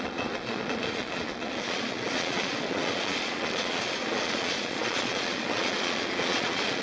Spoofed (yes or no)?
yes